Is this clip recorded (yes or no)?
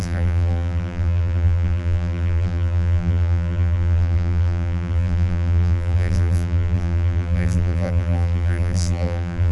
no